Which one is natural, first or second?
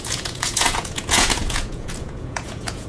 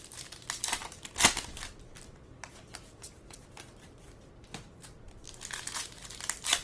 second